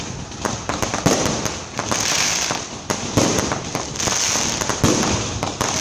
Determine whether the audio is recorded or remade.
recorded